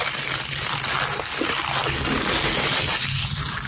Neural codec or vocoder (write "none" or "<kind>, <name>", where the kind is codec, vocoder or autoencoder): none